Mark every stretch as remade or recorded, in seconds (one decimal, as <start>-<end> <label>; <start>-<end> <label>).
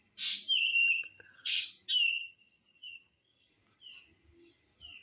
0.0-0.6 recorded; 0.6-1.6 remade; 1.6-2.1 recorded; 2.1-3.5 remade; 3.5-5.0 recorded